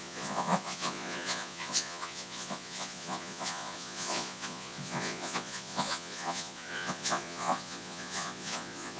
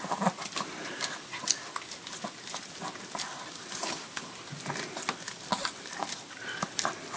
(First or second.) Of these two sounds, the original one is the second